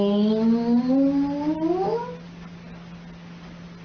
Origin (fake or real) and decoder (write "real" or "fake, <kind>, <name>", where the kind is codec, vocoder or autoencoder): real